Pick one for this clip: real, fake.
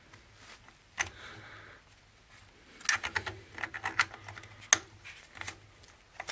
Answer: real